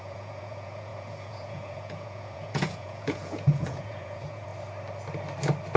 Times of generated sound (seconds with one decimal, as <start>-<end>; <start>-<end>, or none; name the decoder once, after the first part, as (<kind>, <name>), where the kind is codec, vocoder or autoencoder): 0.0-4.5 (vocoder, Vocos)